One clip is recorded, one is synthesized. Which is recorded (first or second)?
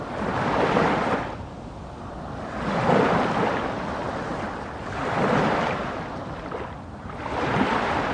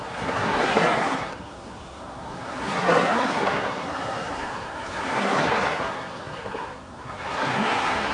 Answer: first